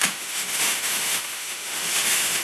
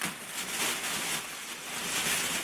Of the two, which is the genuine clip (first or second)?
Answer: second